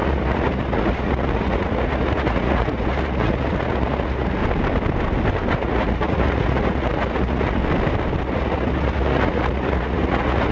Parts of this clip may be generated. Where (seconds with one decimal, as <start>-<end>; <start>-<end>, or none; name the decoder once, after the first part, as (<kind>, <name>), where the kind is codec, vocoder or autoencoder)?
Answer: 0.0-4.4 (vocoder, Vocos); 5.5-7.6; 8.2-10.5